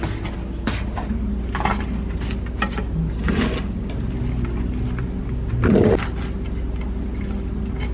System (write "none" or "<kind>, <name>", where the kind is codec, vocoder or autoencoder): none